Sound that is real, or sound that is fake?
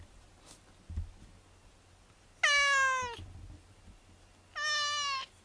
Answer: real